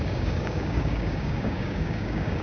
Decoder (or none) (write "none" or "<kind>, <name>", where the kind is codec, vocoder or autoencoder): codec, DAC